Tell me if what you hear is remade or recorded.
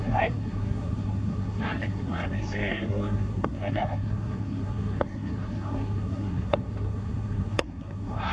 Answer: remade